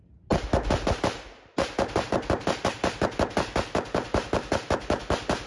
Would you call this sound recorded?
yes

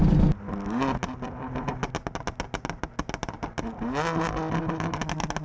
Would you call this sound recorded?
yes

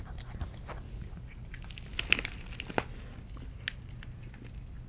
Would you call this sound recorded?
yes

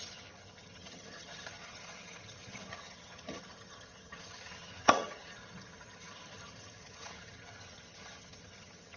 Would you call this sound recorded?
no